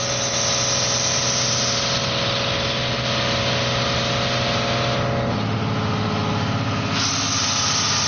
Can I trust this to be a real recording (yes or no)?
yes